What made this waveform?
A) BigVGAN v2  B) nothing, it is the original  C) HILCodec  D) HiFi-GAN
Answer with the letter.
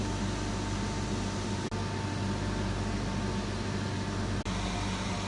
B